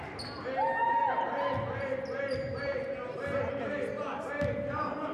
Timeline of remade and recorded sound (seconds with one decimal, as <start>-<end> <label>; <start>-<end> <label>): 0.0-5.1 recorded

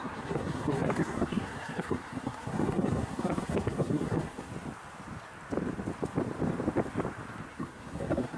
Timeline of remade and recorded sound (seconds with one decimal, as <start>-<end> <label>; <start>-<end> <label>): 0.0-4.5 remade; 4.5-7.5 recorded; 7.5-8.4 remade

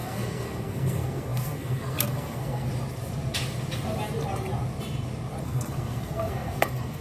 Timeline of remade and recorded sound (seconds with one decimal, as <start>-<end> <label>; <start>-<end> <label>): 0.0-2.7 remade; 2.7-5.4 recorded; 5.4-7.0 remade

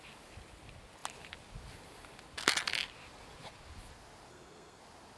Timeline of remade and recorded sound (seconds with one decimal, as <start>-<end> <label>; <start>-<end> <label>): 0.0-4.3 recorded; 4.3-4.8 remade; 4.8-5.2 recorded